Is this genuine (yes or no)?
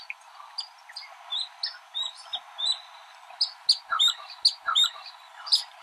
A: yes